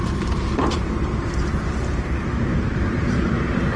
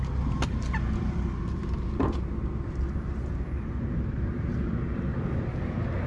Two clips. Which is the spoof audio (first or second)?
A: first